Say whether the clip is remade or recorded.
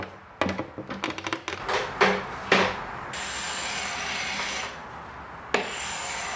recorded